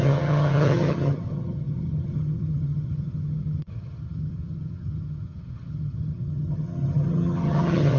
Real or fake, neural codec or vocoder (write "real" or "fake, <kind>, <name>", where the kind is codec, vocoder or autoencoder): fake, vocoder, HiFi-GAN